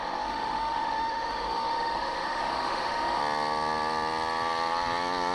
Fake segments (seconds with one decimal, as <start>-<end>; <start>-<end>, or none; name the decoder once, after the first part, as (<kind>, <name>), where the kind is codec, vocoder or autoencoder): 0.0-3.2 (autoencoder, DAC-VAE)